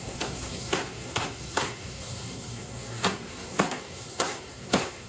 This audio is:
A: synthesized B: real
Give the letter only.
A